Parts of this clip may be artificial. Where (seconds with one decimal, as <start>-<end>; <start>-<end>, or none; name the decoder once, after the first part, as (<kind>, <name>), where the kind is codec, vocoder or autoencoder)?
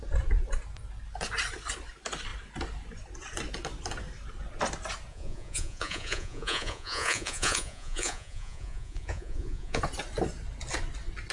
5.1-9.8 (vocoder, Vocos)